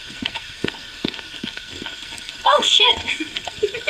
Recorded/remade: remade